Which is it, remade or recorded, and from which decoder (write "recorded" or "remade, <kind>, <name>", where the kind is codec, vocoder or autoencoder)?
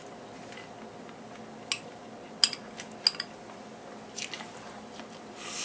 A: recorded